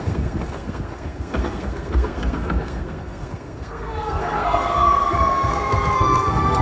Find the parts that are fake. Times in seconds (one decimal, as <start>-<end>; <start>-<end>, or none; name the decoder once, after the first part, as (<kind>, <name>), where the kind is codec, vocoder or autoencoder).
0.0-6.6 (codec, SNAC)